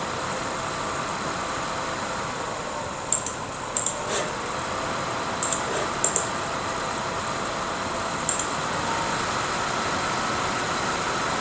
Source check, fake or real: real